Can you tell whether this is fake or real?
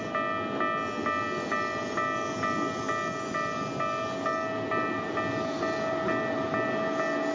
real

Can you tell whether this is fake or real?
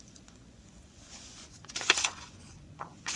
fake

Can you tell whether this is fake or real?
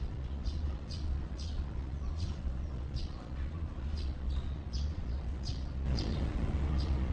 fake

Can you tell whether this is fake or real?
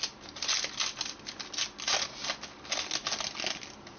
real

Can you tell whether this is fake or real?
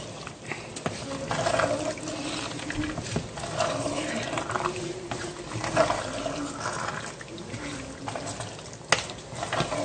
real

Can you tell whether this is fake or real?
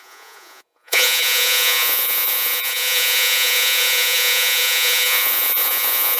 fake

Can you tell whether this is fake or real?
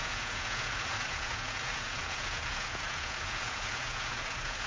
fake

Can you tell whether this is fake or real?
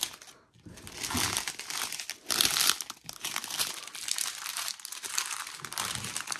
real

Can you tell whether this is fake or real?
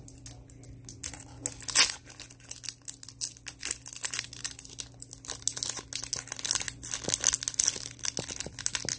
real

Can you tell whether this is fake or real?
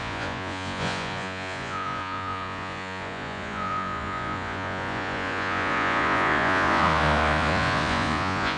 fake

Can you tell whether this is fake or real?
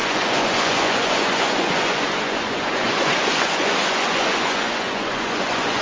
fake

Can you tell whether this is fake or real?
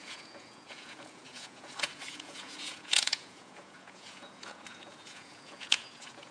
fake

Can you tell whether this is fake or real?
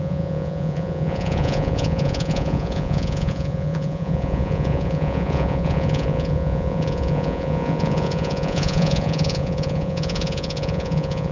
fake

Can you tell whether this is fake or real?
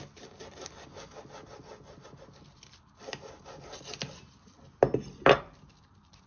real